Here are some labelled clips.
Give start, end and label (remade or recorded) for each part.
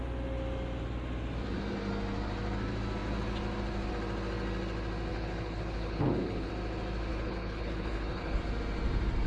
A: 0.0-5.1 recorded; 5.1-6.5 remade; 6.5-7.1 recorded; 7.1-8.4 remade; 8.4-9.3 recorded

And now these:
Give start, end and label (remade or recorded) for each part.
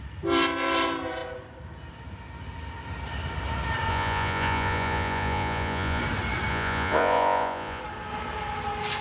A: 0.0-3.9 recorded; 3.9-6.0 remade; 6.0-6.5 recorded; 6.5-7.8 remade; 7.8-9.0 recorded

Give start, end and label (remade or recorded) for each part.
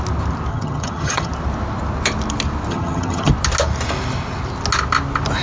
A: 0.0-0.5 recorded; 0.5-1.3 remade; 1.3-2.7 recorded; 2.7-3.3 remade; 3.3-5.4 recorded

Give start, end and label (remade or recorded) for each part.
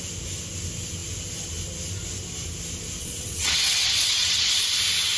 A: 0.0-3.0 recorded; 3.0-4.7 remade; 4.7-5.2 recorded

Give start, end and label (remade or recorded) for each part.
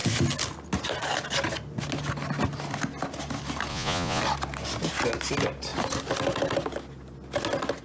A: 0.0-3.7 recorded; 3.7-4.2 remade; 4.2-7.8 recorded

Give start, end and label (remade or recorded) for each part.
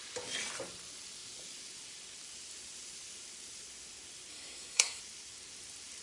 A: 0.0-4.3 recorded; 4.3-5.0 remade; 5.0-6.0 recorded